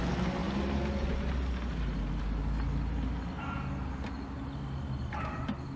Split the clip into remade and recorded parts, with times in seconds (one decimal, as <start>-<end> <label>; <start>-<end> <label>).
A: 0.0-5.8 recorded